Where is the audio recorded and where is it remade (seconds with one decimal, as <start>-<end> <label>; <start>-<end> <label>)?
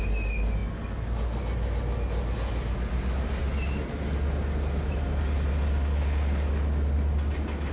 0.0-7.7 recorded